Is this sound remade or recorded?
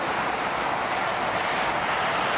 recorded